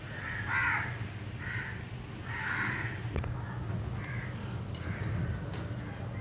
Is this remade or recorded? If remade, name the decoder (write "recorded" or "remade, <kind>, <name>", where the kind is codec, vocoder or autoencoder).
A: recorded